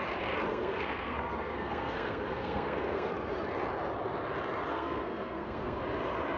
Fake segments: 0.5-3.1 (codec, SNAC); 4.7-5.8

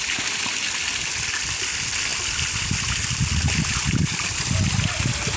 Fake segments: none

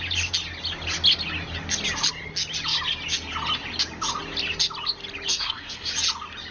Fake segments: 5.3-5.9 (codec, SNAC)

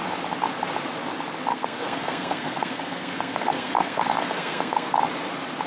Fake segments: 1.5-4.9 (codec, SNAC)

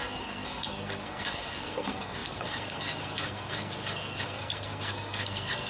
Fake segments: 0.0-5.7 (codec, SNAC)

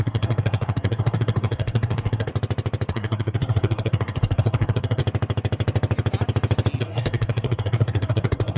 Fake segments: 0.0-2.3 (codec, SNAC); 2.9-5.0; 6.8-8.6

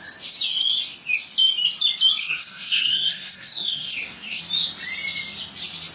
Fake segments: 2.2-4.4 (codec, SNAC)